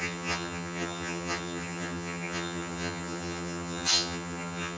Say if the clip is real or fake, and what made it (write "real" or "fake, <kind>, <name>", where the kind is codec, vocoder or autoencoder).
fake, vocoder, HiFi-GAN